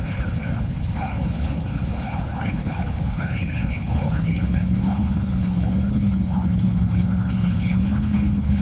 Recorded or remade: remade